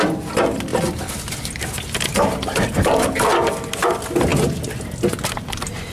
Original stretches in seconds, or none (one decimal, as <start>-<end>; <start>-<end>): 0.0-5.9